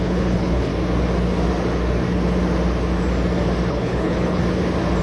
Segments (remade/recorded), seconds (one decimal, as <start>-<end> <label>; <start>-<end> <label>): 0.0-0.7 remade; 0.7-3.7 recorded; 3.7-4.4 remade; 4.4-5.0 recorded